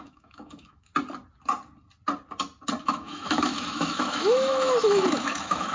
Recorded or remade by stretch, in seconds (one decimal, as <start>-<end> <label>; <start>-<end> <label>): 0.0-0.9 remade; 0.9-2.8 recorded; 2.8-5.7 remade